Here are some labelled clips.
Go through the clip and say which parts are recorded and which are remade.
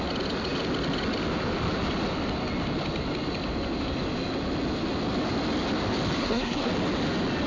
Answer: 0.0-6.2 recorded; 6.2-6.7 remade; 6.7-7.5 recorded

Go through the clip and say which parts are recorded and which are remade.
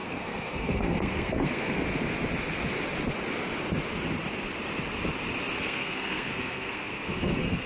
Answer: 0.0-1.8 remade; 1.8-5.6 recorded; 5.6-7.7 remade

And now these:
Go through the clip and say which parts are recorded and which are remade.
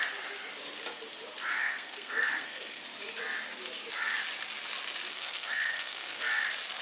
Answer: 0.0-1.6 recorded; 1.6-2.8 remade; 2.8-5.1 recorded; 5.1-6.2 remade; 6.2-6.8 recorded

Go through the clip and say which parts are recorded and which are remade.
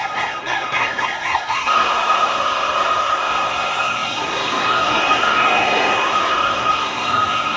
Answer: 0.0-7.6 remade